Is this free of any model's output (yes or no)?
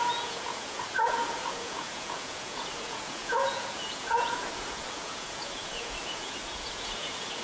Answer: no